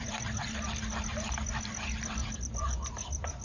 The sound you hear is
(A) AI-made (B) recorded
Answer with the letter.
B